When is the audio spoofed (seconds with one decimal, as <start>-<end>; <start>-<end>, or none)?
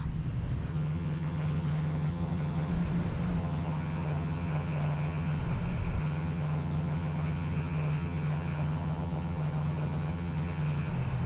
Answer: 0.7-2.7; 3.4-5.4; 6.0-10.9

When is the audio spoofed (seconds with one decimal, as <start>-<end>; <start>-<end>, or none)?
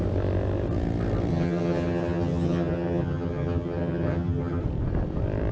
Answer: 1.3-4.6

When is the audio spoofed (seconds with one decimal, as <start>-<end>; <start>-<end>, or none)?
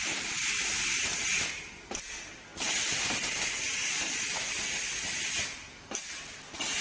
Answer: none